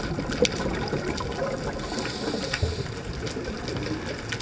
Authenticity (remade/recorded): recorded